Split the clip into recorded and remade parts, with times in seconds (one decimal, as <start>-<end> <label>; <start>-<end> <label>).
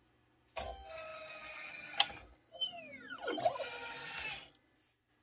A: 0.0-5.2 recorded